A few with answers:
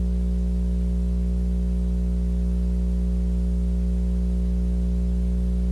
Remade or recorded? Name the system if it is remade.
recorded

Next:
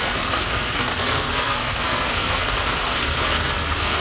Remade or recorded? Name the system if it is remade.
remade, codec, SNAC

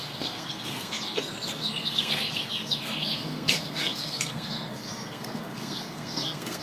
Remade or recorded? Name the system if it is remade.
remade, codec, SNAC